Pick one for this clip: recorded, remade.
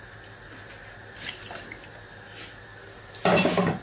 recorded